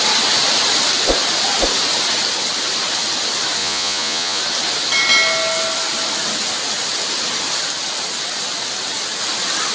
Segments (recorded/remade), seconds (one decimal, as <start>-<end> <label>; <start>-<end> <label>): 0.0-3.6 recorded; 3.6-4.4 remade; 4.4-9.7 recorded